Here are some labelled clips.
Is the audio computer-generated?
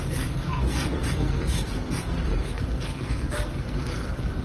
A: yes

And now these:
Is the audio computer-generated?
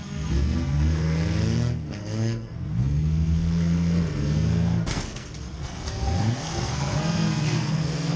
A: yes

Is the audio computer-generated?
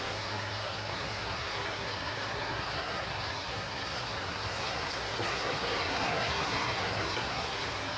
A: yes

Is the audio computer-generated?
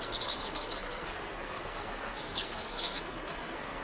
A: yes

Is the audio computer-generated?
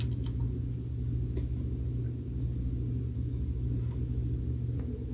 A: no